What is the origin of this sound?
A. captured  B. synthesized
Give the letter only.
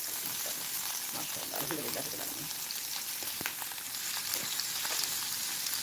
A